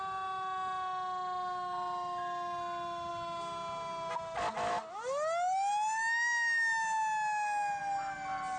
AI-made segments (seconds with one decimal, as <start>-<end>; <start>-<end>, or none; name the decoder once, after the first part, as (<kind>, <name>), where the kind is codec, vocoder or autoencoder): none